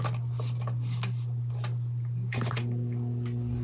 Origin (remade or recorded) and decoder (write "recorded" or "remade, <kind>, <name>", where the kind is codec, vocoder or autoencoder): recorded